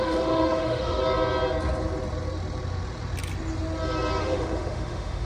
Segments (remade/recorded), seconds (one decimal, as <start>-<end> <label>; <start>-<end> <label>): 0.0-1.0 remade; 1.0-4.2 recorded; 4.2-5.3 remade